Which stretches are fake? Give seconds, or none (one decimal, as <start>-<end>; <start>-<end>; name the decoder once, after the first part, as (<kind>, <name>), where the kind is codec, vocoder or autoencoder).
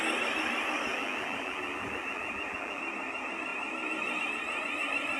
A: 0.9-2.8 (vocoder, BigVGAN v2)